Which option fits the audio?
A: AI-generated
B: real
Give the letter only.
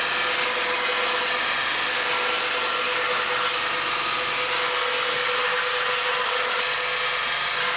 B